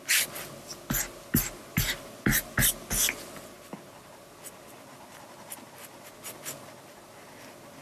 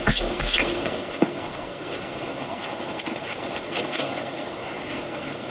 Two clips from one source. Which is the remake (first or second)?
second